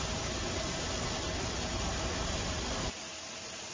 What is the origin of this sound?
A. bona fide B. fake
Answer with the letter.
A